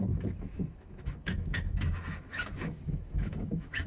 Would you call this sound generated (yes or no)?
yes